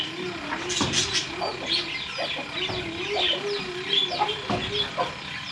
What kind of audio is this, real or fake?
real